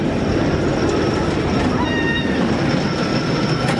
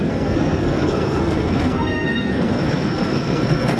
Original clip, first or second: first